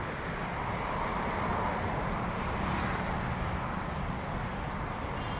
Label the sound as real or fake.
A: real